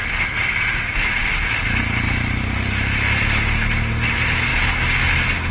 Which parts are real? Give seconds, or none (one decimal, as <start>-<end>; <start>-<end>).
0.0-5.5